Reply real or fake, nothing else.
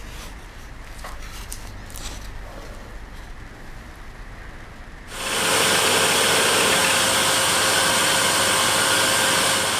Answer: real